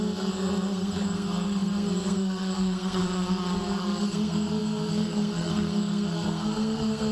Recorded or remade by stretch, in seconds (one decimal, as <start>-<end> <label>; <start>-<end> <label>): 0.0-7.1 remade